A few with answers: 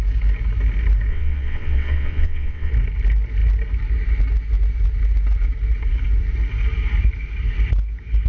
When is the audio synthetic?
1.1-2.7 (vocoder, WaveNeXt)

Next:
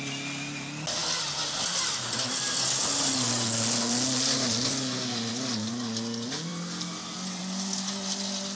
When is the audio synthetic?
none

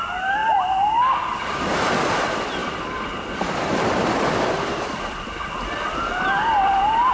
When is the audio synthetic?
2.6-7.1 (vocoder, BigVGAN v2)